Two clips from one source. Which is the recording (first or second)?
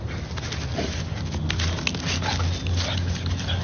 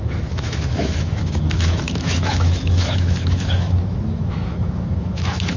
first